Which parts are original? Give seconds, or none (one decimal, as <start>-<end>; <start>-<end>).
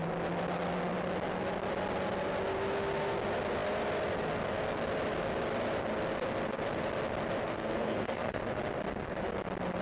0.0-7.5; 8.4-9.8